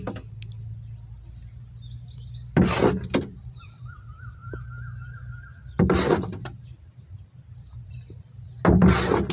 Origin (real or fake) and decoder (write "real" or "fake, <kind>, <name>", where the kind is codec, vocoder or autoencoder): real